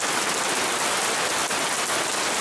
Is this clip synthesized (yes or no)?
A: no